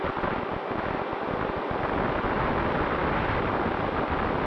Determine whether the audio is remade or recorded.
recorded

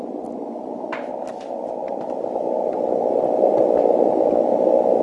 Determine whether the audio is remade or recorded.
recorded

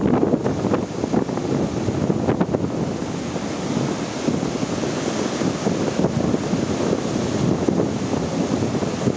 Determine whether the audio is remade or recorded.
recorded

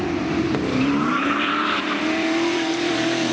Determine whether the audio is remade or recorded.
remade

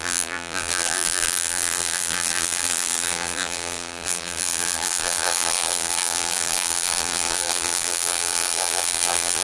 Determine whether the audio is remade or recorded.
remade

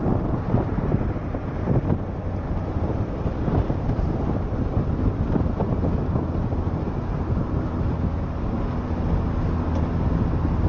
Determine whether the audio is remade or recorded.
recorded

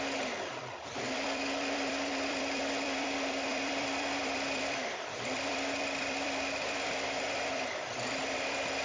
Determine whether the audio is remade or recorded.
remade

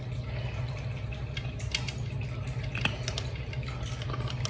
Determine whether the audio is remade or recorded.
recorded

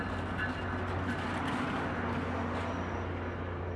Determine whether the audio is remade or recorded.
recorded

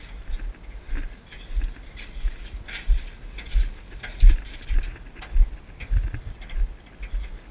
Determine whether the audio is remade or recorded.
recorded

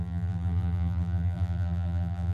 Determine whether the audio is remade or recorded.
remade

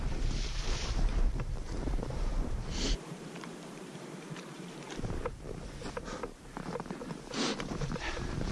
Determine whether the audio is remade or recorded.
remade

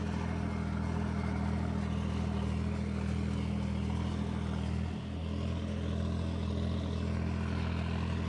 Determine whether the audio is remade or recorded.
recorded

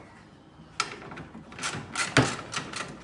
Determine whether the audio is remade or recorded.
recorded